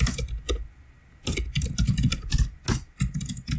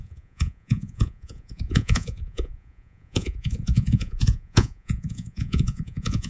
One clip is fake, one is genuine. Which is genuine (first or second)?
first